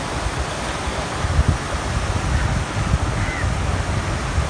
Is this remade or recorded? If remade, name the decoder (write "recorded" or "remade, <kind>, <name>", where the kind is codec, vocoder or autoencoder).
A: recorded